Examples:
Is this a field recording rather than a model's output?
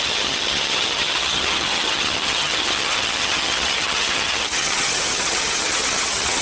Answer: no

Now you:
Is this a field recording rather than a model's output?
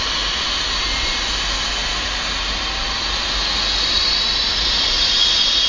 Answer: yes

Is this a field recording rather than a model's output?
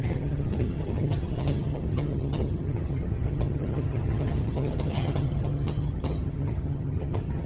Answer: no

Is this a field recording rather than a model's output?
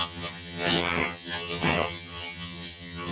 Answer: no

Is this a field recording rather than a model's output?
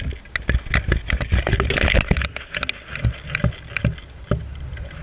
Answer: yes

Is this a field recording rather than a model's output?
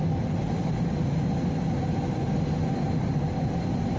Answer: yes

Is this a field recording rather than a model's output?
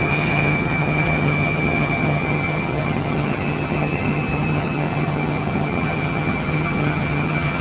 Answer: no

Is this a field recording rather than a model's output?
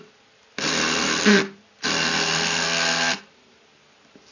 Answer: yes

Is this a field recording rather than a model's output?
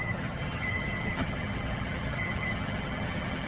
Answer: no